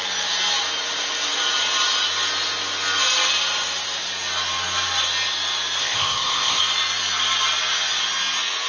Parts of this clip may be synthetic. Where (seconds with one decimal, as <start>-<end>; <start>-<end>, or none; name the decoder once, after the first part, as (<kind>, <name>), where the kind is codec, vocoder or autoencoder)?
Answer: 5.8-6.6 (codec, ZipCodec)